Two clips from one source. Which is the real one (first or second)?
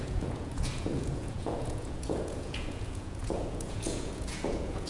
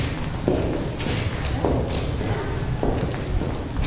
second